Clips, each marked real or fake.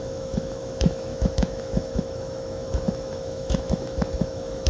fake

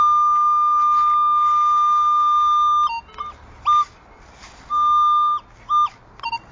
real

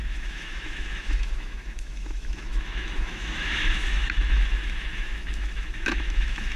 fake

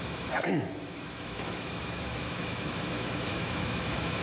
fake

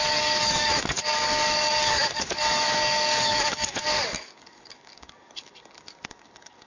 fake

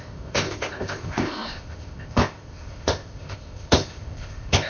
fake